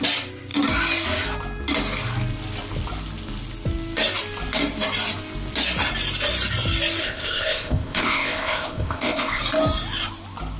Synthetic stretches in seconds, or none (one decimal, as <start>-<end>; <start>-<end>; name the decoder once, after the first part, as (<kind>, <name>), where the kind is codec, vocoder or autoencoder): 7.0-9.4 (codec, ZipCodec)